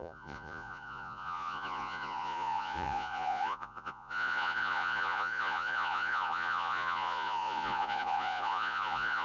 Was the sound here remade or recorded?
remade